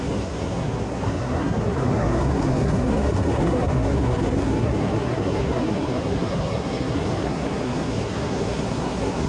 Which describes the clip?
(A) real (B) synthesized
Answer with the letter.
B